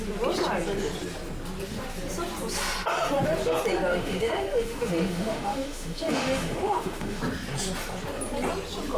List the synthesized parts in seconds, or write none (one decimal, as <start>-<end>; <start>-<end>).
3.9-7.2